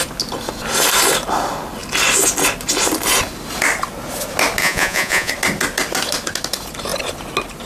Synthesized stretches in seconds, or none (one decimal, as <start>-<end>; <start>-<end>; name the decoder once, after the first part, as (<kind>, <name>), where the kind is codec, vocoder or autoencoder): 4.6-5.3 (vocoder, Vocos)

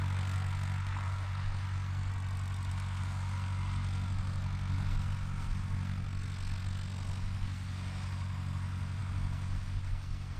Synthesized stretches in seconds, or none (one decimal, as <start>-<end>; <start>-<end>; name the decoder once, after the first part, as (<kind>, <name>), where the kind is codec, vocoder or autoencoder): 0.0-2.1 (codec, SNAC); 2.7-10.4

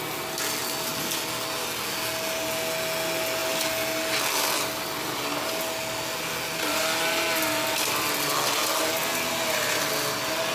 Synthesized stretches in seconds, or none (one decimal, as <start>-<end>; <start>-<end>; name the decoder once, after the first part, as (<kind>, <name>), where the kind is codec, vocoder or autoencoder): none

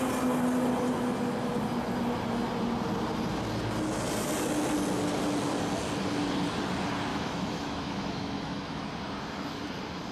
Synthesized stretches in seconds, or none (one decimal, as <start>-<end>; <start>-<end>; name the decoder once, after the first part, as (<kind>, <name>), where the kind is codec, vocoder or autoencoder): 7.1-8.8 (autoencoder, DAC-VAE)

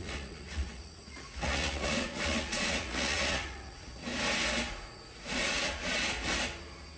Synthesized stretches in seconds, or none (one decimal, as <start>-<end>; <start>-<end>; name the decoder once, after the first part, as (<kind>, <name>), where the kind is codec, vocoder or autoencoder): 0.0-4.1 (vocoder, Vocos); 4.7-5.9

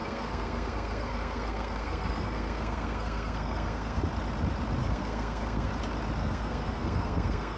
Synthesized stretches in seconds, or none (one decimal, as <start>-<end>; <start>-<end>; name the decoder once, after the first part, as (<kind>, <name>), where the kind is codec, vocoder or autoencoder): 0.0-4.0 (codec, SNAC); 4.8-5.7; 6.2-7.6

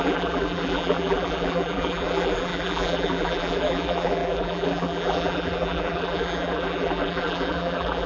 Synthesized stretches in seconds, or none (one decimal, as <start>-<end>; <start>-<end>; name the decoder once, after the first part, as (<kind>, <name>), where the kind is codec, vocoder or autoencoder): 0.0-8.1 (vocoder, BigVGAN v2)